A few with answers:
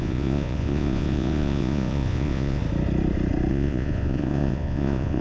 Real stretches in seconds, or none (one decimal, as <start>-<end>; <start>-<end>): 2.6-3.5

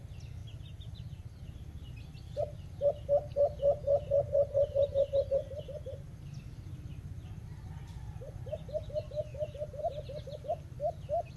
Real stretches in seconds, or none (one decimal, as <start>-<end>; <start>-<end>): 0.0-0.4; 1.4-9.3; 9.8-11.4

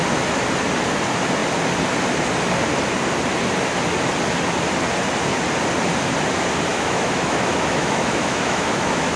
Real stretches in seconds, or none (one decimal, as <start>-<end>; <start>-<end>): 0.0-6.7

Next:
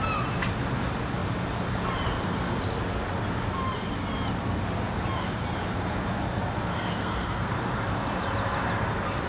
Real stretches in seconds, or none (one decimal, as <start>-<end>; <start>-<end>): 0.0-6.7; 7.5-9.3